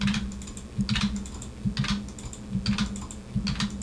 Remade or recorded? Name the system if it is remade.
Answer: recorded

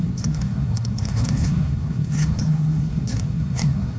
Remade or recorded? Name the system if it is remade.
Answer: remade, codec, SNAC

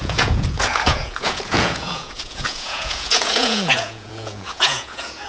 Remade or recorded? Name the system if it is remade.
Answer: remade, vocoder, Vocos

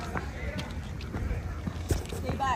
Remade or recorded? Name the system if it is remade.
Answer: recorded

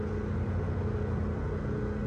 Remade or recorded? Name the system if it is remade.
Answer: recorded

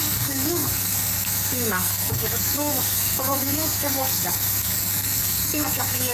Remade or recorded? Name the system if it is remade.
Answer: remade, codec, SNAC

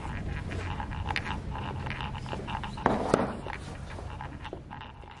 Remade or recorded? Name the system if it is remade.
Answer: recorded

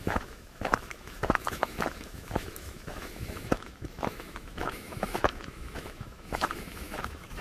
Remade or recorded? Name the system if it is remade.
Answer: remade, autoencoder, DAC-VAE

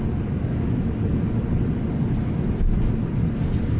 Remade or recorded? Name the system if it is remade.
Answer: remade, vocoder, BigVGAN v2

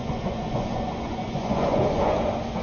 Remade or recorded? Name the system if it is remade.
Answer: remade, vocoder, Vocos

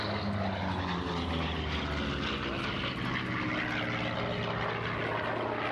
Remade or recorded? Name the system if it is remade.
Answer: recorded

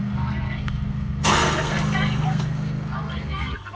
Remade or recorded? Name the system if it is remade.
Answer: remade, codec, SNAC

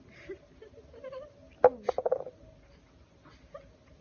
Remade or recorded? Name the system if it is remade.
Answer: recorded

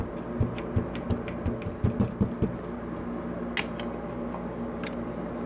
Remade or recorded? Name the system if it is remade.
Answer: recorded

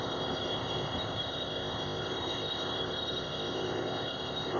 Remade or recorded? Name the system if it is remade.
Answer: remade, codec, ZipCodec